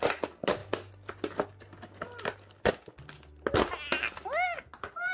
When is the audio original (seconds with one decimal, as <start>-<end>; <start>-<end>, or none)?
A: 0.0-5.1